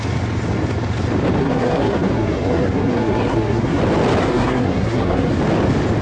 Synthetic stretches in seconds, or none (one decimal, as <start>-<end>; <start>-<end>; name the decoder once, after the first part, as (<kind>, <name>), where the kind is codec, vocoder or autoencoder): 1.4-3.8 (codec, SNAC); 4.2-5.3